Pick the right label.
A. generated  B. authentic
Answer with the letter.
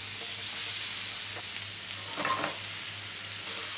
B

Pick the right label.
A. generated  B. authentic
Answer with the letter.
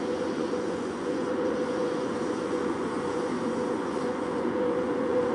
A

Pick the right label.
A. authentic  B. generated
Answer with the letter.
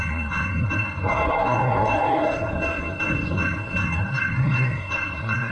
B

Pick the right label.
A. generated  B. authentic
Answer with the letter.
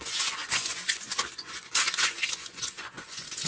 A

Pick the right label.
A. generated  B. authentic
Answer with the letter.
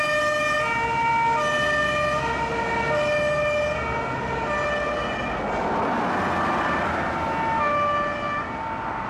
B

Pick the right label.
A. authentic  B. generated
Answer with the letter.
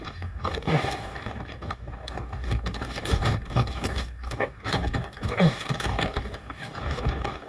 B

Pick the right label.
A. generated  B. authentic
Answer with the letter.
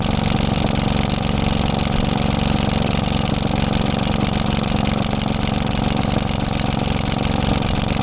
B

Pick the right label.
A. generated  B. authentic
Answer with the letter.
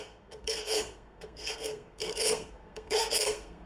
A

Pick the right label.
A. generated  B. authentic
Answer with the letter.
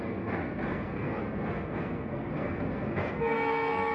A